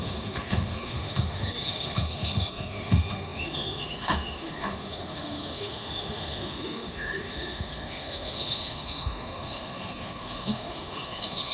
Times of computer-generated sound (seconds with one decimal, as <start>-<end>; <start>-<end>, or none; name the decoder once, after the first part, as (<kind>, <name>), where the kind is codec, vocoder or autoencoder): 0.0-11.5 (autoencoder, DAC-VAE)